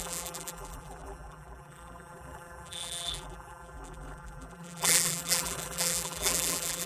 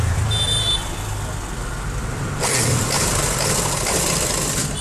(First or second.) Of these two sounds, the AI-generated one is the first